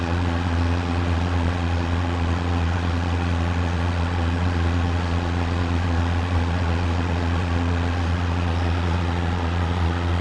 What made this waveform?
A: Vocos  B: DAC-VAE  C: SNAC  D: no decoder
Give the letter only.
A